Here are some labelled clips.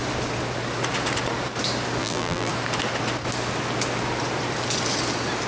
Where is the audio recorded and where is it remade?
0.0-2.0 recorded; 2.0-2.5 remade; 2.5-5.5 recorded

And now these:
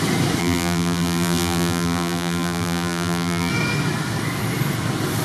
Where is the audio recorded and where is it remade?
0.0-0.4 recorded; 0.4-3.5 remade; 3.5-5.2 recorded

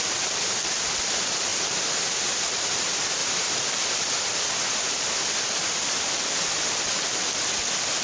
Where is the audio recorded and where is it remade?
0.0-1.5 recorded; 1.5-2.7 remade; 2.7-3.2 recorded; 3.2-6.2 remade; 6.2-8.0 recorded

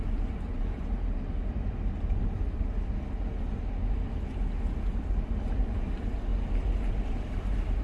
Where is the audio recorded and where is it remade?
0.0-1.4 remade; 1.4-5.6 recorded; 5.6-6.3 remade; 6.3-6.9 recorded; 6.9-7.8 remade